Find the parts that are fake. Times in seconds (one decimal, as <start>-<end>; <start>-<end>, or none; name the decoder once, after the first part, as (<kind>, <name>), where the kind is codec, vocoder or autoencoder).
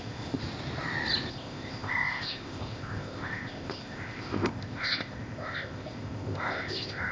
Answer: 0.0-0.4 (codec, ZipCodec); 1.3-7.1